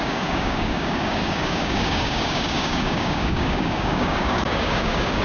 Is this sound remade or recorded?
remade